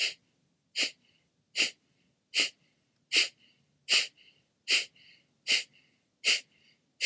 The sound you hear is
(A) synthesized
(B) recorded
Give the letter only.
B